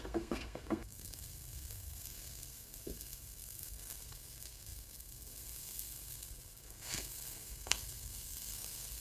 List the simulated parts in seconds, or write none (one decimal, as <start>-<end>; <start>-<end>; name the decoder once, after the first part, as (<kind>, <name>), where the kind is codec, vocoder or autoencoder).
0.0-9.0 (codec, SNAC)